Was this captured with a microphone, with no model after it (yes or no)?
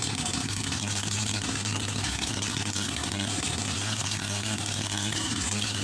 no